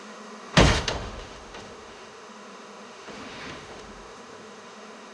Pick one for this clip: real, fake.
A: fake